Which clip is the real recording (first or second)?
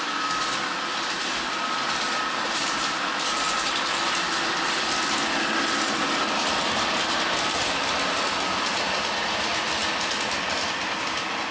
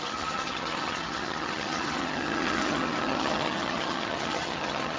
first